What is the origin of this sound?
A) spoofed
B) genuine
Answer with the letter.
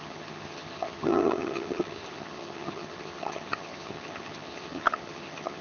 A